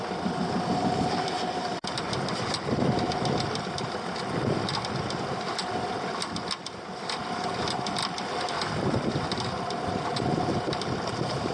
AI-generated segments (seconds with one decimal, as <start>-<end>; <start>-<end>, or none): none